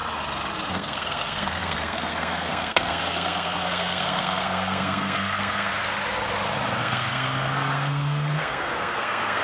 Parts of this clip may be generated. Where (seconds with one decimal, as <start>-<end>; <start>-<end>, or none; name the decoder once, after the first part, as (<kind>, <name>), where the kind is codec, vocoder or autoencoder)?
0.7-5.7 (codec, SNAC); 6.8-9.4